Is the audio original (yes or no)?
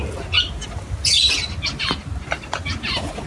yes